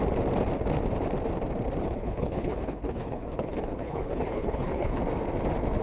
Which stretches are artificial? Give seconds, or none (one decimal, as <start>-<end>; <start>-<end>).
1.8-5.0